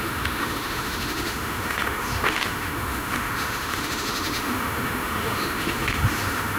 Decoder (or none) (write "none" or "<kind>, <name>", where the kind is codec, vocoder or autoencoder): autoencoder, DAC-VAE